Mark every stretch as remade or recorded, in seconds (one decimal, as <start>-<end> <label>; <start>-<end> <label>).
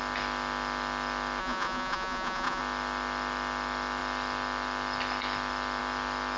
0.0-1.4 recorded; 1.4-2.6 remade; 2.6-6.4 recorded